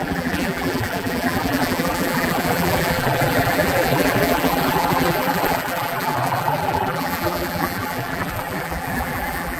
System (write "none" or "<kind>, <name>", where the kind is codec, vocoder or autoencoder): vocoder, BigVGAN v2